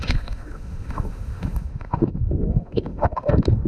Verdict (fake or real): fake